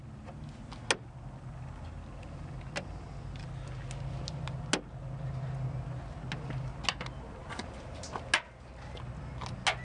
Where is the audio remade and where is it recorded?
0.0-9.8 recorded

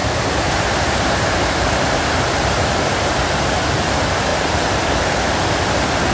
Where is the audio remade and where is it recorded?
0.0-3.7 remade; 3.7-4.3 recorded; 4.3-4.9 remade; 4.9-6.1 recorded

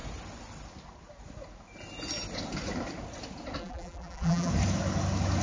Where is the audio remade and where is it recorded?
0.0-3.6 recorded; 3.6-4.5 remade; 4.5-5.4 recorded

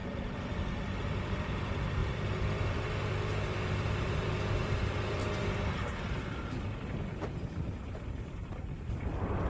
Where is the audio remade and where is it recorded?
0.0-5.2 remade; 5.2-7.9 recorded; 7.9-9.5 remade

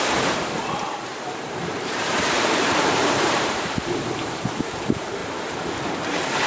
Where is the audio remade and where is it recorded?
0.0-5.2 remade; 5.2-6.5 recorded

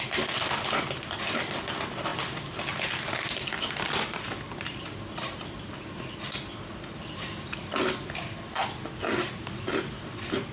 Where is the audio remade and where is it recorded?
0.0-10.5 recorded

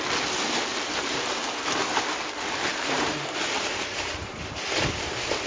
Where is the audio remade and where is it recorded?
0.0-0.7 recorded; 0.7-2.0 remade; 2.0-2.7 recorded; 2.7-4.9 remade; 4.9-5.5 recorded